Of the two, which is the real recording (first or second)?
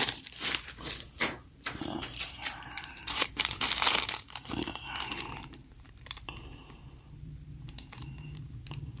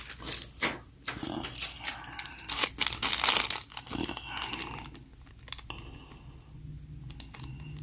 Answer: second